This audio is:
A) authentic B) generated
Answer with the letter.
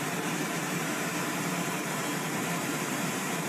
B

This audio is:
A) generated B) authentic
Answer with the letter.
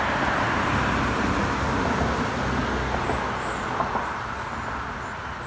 B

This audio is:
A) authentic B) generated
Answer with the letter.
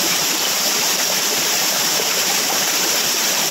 B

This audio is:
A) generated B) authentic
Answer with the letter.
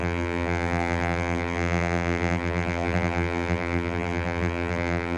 A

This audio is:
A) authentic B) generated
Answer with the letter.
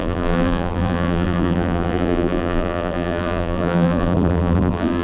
B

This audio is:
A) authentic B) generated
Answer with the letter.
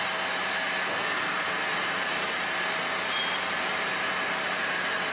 A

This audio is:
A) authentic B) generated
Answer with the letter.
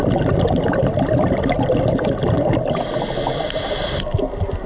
A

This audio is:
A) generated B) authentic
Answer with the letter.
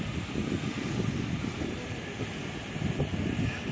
B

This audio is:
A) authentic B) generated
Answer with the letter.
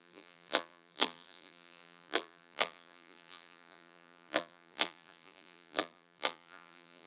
B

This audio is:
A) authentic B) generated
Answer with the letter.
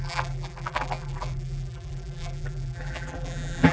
B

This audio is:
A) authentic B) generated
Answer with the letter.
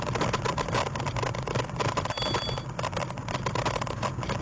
A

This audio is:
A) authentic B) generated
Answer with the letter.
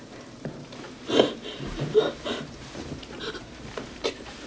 B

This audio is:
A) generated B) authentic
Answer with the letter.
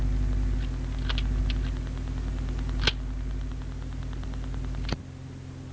B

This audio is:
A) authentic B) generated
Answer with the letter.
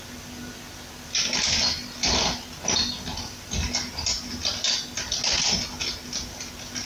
A